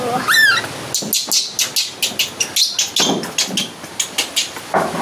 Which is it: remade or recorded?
recorded